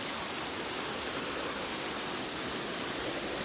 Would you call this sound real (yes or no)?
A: yes